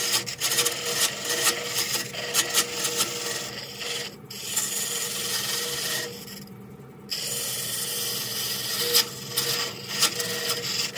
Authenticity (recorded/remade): recorded